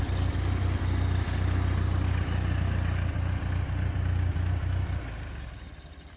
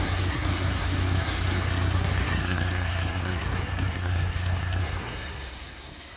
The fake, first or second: second